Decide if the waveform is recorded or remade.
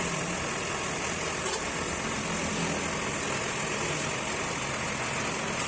recorded